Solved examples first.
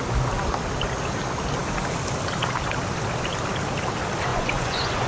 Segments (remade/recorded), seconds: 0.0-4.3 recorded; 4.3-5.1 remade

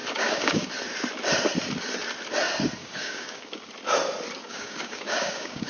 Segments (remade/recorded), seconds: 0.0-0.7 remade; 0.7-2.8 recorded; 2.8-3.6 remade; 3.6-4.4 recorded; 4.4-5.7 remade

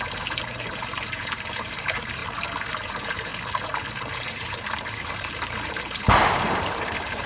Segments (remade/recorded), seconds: 0.0-2.2 remade; 2.2-2.7 recorded; 2.7-3.3 remade; 3.3-3.9 recorded; 3.9-7.3 remade

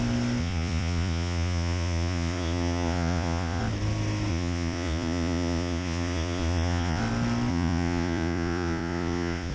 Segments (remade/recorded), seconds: 0.0-0.4 recorded; 0.4-3.6 remade; 3.6-4.3 recorded; 4.3-7.0 remade; 7.0-7.5 recorded; 7.5-9.5 remade

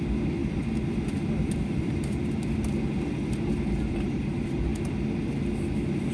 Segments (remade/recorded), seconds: 0.0-0.4 remade; 0.4-1.8 recorded; 1.8-4.7 remade; 4.7-6.1 recorded

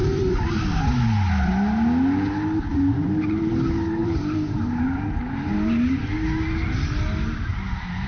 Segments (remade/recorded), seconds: 0.0-0.8 remade; 0.8-2.7 recorded; 2.7-3.5 remade; 3.5-4.0 recorded; 4.0-6.0 remade; 6.0-7.5 recorded; 7.5-8.1 remade

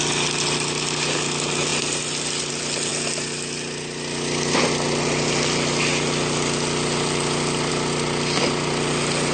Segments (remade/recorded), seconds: 0.0-9.3 recorded